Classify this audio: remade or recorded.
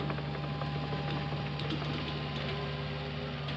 recorded